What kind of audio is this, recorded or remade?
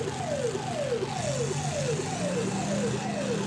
recorded